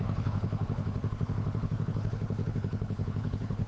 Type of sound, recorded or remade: remade